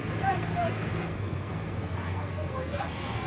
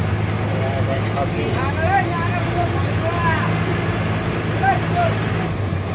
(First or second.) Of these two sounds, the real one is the second